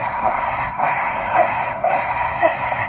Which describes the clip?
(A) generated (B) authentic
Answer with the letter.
A